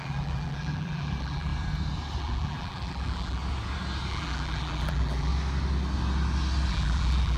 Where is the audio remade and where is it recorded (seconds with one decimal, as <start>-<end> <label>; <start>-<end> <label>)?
0.0-1.5 remade; 1.5-2.2 recorded; 2.2-3.4 remade; 3.4-4.1 recorded; 4.1-5.3 remade; 5.3-6.7 recorded; 6.7-7.4 remade